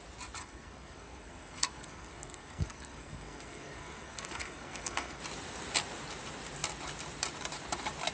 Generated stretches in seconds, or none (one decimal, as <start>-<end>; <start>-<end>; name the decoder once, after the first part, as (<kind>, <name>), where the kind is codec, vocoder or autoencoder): 0.4-5.2 (codec, SNAC)